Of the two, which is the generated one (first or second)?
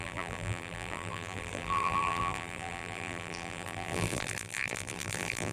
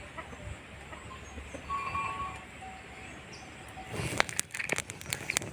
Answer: first